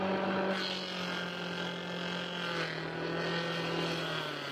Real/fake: real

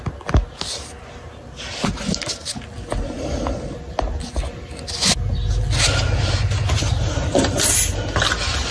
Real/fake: real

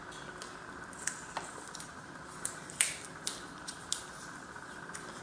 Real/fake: real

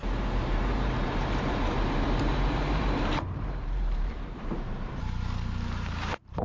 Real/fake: fake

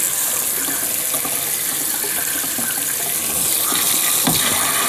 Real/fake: real